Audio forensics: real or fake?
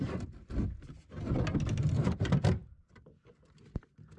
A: real